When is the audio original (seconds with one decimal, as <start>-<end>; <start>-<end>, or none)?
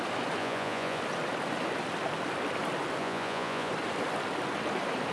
0.0-0.4; 1.0-3.0; 3.7-5.1